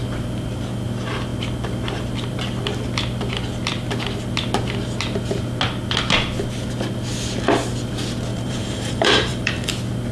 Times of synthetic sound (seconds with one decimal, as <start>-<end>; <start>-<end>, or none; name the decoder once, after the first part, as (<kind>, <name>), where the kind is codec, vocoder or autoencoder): 8.3-9.7 (vocoder, BigVGAN v2)